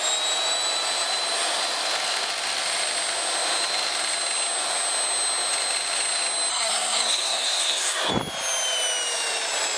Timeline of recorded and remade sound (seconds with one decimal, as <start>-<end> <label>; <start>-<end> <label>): 0.0-6.5 recorded; 6.5-8.1 remade; 8.1-9.8 recorded